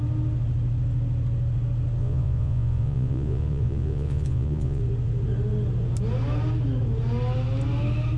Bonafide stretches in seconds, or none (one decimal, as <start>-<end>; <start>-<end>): 0.0-2.0; 4.8-8.2